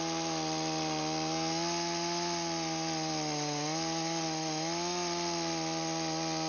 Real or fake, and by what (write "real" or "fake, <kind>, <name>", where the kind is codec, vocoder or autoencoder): real